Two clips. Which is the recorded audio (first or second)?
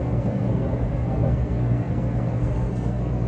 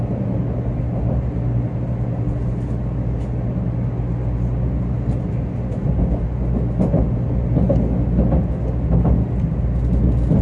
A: second